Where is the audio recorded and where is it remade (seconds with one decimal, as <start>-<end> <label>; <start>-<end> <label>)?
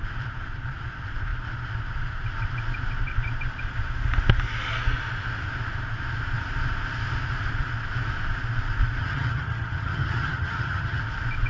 0.0-9.0 recorded; 9.0-11.0 remade; 11.0-11.5 recorded